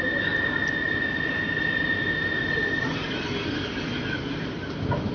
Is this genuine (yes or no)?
yes